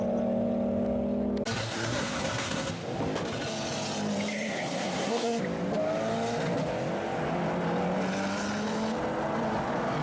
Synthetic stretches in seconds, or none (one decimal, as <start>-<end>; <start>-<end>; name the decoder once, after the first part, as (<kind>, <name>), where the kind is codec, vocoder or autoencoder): 1.6-2.7 (codec, SNAC); 4.3-5.4